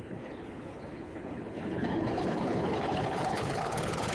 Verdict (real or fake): fake